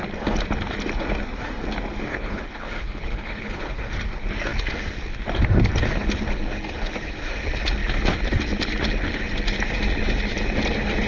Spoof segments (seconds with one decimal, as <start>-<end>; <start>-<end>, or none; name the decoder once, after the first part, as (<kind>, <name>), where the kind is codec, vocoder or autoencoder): 2.1-3.8 (codec, HILCodec)